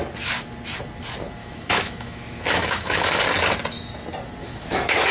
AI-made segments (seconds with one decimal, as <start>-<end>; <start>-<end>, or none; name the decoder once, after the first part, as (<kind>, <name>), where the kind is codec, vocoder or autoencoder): 1.4-3.2 (autoencoder, DAC-VAE); 4.4-5.1